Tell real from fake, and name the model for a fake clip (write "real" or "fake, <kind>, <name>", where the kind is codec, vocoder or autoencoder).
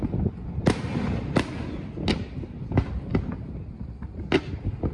real